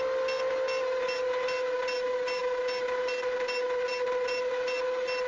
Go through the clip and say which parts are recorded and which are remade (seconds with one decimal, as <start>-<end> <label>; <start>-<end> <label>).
0.0-5.3 recorded